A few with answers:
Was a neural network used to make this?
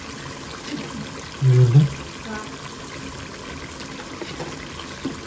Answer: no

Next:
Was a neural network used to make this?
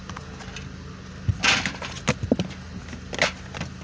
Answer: no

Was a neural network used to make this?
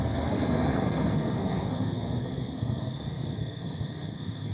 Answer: yes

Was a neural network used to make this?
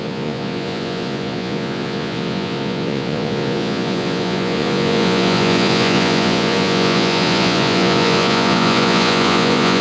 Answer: yes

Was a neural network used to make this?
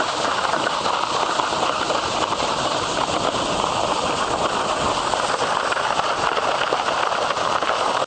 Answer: no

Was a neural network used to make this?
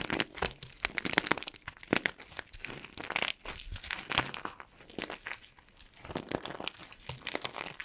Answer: no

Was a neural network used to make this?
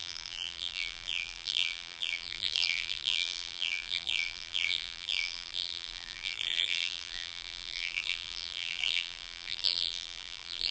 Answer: yes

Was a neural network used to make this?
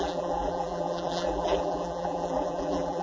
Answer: yes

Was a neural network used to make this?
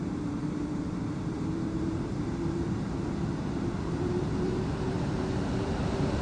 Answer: yes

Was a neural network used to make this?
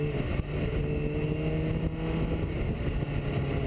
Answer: no